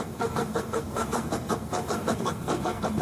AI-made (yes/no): yes